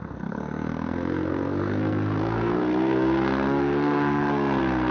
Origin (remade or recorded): remade